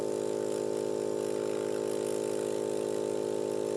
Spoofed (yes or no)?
no